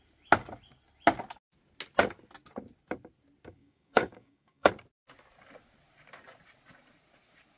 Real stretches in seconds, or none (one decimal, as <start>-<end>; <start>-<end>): 0.0-3.6; 4.7-7.6